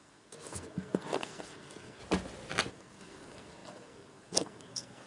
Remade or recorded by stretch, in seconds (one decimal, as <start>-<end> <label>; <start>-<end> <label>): 0.0-2.0 remade; 2.0-2.7 recorded; 2.7-5.1 remade